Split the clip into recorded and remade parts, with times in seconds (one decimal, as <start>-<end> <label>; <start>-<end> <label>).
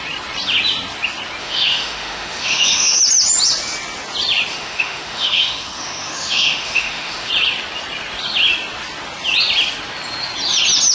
0.0-1.4 recorded; 1.4-3.0 remade; 3.0-4.5 recorded; 4.5-7.3 remade; 7.3-10.9 recorded